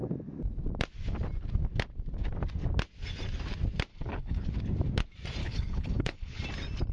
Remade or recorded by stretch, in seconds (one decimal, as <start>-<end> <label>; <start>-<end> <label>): 0.0-3.9 recorded; 3.9-4.5 remade; 4.5-5.4 recorded; 5.4-6.4 remade; 6.4-6.9 recorded